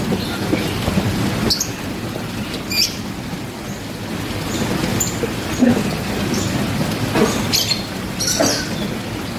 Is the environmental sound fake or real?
real